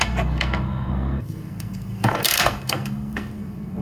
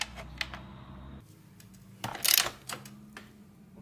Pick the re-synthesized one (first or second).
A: first